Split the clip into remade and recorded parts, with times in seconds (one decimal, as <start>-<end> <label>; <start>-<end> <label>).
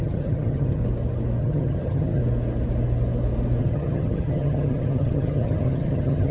0.0-0.8 remade; 0.8-1.4 recorded; 1.4-2.2 remade; 2.2-3.6 recorded; 3.6-6.3 remade